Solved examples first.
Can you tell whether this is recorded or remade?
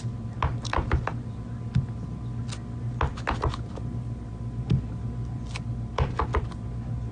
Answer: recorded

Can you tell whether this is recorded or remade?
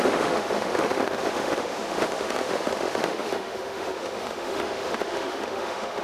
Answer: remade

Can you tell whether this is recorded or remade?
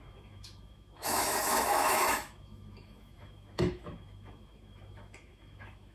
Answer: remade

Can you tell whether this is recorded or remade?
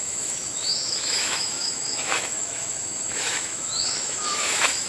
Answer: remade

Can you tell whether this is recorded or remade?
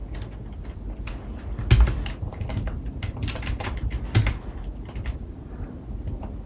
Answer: recorded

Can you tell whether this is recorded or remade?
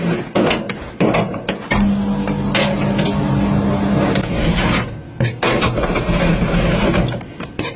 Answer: recorded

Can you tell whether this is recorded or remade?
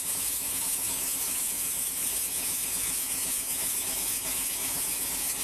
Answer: remade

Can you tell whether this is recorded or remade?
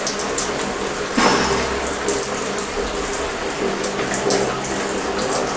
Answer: recorded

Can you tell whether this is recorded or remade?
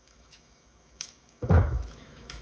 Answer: remade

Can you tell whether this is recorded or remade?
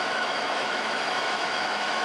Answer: remade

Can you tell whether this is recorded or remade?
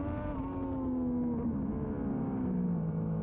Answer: recorded